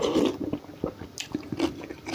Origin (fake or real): real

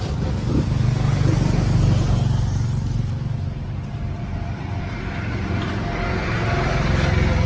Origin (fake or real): real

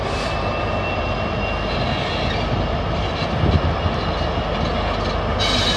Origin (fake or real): real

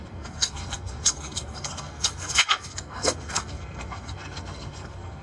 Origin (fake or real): fake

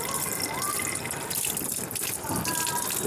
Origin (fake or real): real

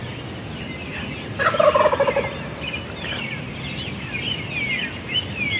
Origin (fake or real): real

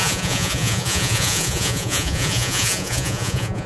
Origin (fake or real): fake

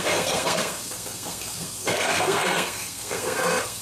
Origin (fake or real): fake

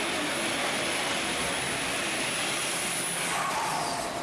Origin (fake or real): real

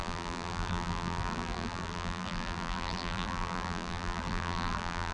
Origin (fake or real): fake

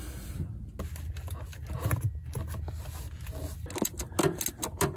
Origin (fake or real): real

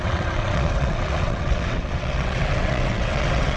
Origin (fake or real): fake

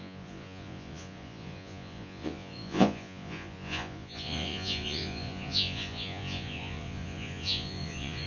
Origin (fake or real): fake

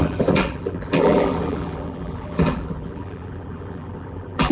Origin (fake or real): fake